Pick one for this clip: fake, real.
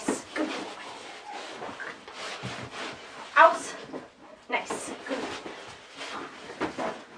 real